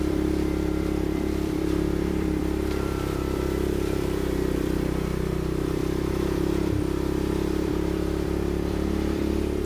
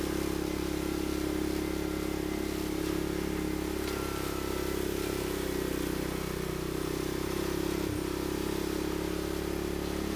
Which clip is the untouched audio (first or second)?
second